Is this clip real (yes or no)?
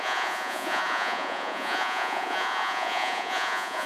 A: no